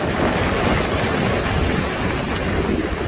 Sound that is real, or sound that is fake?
real